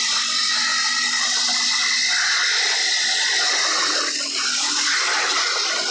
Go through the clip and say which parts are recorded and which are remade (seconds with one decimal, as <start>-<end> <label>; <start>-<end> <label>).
0.0-5.9 recorded